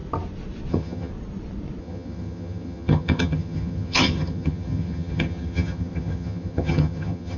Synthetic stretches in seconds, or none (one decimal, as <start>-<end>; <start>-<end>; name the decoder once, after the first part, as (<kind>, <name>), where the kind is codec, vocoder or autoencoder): 0.7-1.1 (vocoder, HiFi-GAN); 1.8-7.4